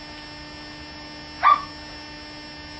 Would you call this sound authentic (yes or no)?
yes